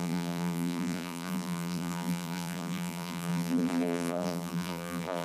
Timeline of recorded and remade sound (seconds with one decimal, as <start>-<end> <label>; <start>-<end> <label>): 0.0-5.2 remade